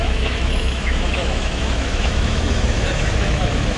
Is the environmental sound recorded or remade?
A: remade